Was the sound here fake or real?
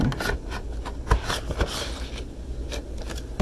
real